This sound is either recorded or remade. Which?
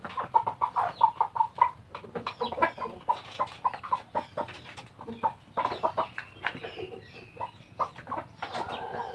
recorded